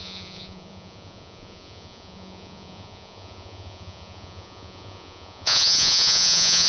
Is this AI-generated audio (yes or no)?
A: yes